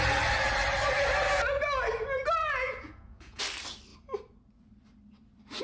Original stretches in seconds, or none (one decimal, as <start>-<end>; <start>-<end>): 0.0-2.4; 3.4-5.6